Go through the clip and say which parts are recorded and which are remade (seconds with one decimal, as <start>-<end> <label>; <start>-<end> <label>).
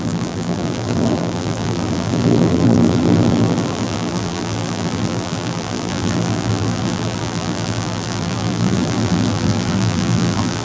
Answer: 0.0-10.6 remade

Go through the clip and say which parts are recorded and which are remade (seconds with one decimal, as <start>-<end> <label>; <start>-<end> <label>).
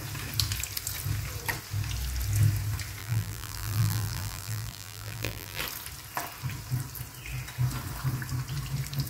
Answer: 0.0-3.0 recorded; 3.0-5.6 remade; 5.6-9.1 recorded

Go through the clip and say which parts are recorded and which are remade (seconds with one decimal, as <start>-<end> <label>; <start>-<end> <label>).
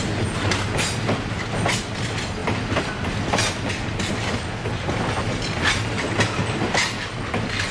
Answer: 0.0-7.7 recorded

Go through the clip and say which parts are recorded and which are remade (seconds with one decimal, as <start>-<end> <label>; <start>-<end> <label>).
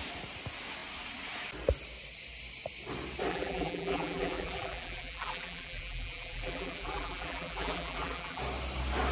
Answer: 0.0-3.3 recorded; 3.3-8.4 remade; 8.4-9.1 recorded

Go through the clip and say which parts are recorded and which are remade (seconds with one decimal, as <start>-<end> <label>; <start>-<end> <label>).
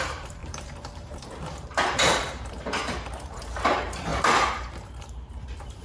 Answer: 0.0-5.8 remade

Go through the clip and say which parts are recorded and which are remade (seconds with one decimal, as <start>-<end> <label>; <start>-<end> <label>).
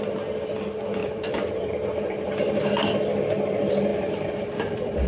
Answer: 0.0-1.0 recorded; 1.0-1.7 remade; 1.7-3.9 recorded; 3.9-5.1 remade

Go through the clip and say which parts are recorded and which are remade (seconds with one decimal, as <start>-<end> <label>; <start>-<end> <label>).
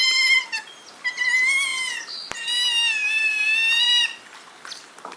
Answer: 0.0-5.2 recorded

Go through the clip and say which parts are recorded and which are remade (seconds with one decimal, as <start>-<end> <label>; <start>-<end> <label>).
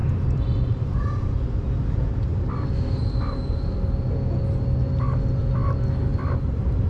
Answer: 0.0-1.6 remade; 1.6-6.1 recorded; 6.1-6.9 remade